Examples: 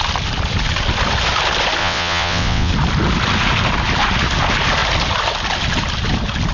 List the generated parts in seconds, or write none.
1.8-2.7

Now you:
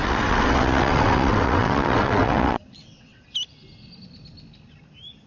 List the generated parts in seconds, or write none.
0.0-3.2